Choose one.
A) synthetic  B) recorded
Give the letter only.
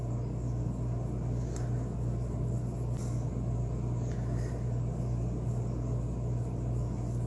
B